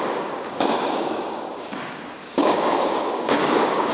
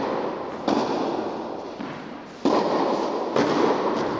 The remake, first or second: first